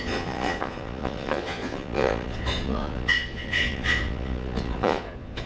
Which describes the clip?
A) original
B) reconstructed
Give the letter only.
B